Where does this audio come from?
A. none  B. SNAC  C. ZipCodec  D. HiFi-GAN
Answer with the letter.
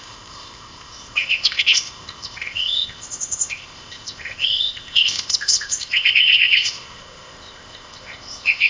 C